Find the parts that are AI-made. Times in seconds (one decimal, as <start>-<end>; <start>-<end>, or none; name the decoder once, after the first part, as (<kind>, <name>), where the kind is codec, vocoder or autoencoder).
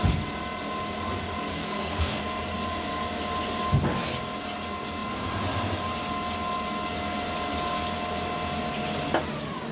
1.5-2.2 (codec, SNAC)